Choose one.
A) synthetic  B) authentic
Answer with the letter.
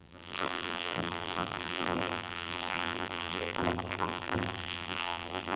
A